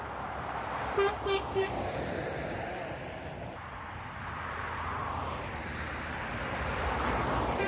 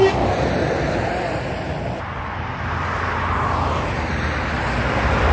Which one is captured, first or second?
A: second